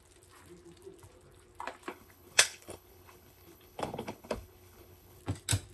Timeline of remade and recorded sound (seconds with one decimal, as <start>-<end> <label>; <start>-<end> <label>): 0.0-1.9 recorded; 1.9-5.2 remade; 5.2-5.7 recorded